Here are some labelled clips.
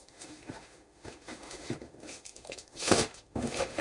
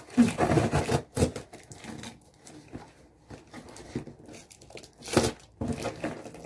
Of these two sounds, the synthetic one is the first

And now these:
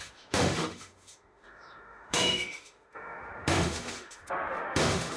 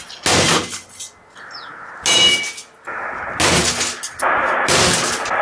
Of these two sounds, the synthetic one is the first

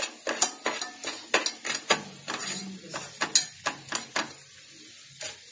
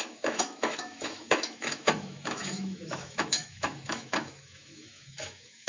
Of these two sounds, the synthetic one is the second